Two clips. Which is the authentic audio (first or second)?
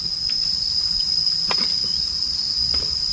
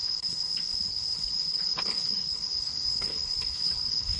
first